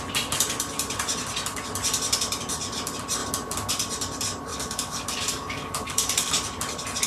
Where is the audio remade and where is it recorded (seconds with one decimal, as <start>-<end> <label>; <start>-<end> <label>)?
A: 0.0-4.5 recorded; 4.5-6.3 remade; 6.3-7.1 recorded